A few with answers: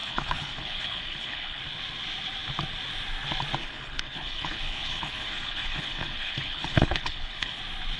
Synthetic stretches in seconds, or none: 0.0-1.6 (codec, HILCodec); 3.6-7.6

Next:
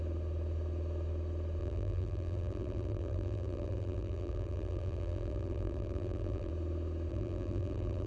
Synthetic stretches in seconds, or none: 1.6-6.5 (vocoder, BigVGAN v2); 7.1-8.1

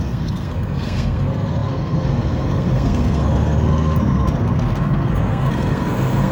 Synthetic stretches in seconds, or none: 0.0-6.3 (codec, SNAC)

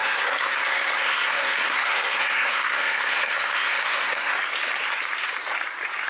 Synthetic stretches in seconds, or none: 0.0-4.3 (codec, SNAC)

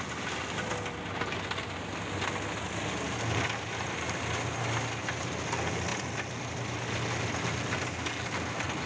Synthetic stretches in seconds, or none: none

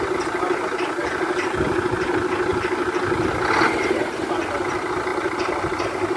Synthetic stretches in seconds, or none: 1.0-1.8 (vocoder, BigVGAN v2); 2.5-3.3; 5.1-6.2